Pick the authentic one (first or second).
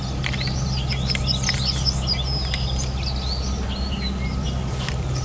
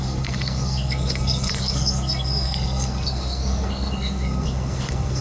first